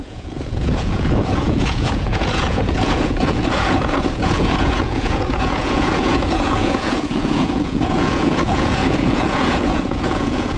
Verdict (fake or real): fake